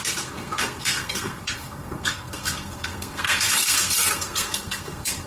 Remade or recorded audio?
remade